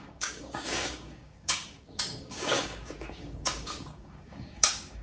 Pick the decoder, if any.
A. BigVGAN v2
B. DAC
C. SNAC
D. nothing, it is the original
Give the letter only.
B